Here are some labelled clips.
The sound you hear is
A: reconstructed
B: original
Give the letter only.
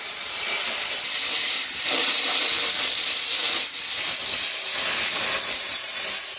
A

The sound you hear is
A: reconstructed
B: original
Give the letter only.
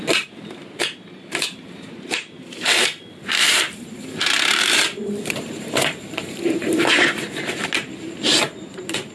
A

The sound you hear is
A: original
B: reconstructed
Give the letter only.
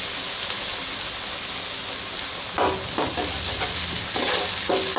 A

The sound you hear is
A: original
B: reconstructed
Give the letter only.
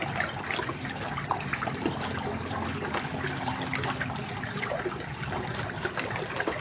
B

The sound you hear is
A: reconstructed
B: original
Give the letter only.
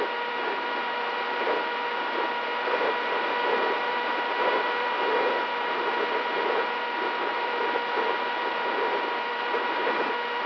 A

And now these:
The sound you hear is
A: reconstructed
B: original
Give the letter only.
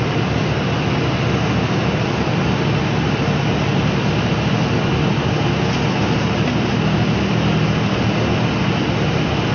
B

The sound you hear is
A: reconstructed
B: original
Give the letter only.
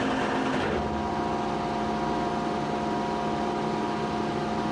B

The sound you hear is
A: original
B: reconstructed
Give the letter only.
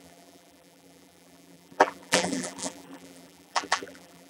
B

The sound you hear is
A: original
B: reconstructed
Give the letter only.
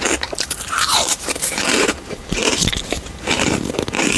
B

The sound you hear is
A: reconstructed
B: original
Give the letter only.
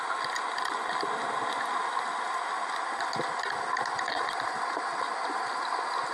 B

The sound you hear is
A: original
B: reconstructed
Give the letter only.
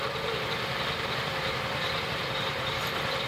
B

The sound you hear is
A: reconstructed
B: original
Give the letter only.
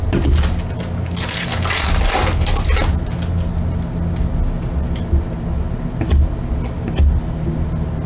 B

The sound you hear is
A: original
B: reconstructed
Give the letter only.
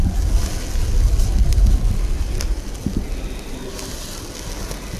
A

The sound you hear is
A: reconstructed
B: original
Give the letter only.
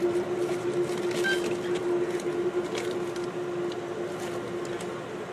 B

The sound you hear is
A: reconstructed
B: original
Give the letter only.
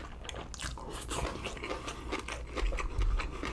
B